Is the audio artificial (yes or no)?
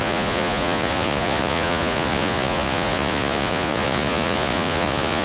yes